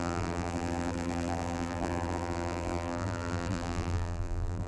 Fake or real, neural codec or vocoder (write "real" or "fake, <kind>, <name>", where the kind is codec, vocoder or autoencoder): fake, vocoder, BigVGAN v2